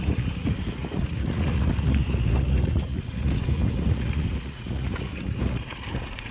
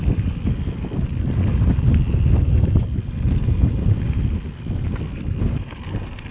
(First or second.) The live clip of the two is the second